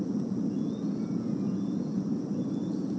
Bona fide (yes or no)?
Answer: no